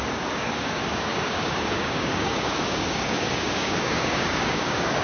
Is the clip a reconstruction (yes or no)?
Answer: yes